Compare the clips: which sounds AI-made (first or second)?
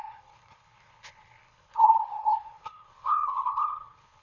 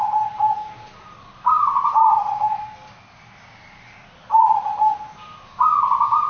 first